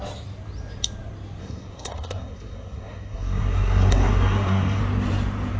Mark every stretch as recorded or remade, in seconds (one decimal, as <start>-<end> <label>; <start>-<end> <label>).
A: 0.0-1.4 recorded; 1.4-4.8 remade; 4.8-5.6 recorded